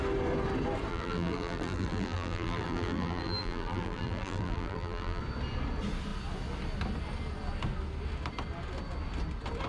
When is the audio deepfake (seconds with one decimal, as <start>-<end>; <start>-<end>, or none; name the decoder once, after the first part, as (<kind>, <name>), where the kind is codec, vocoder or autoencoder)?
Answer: 0.9-5.2 (vocoder, BigVGAN v2)